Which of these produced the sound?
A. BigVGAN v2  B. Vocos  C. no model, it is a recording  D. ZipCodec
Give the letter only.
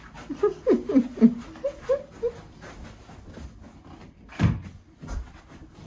C